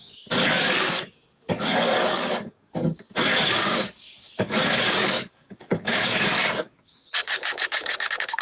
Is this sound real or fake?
fake